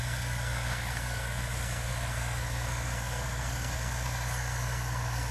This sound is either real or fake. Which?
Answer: fake